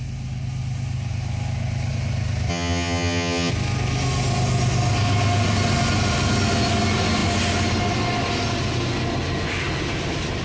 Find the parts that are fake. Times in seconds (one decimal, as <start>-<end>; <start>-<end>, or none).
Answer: 2.5-3.5